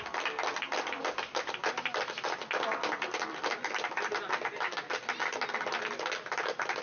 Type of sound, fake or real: real